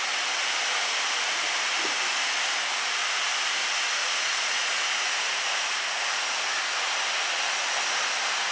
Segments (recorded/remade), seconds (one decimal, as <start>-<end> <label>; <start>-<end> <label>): 0.0-4.0 recorded; 4.0-6.4 remade; 6.4-8.5 recorded